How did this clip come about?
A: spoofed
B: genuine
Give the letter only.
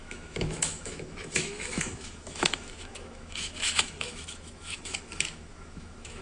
A